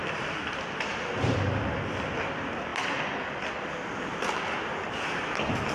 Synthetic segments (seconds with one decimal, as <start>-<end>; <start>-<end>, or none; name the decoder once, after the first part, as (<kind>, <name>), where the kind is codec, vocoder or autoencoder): 0.0-0.6 (vocoder, BigVGAN v2); 2.7-3.5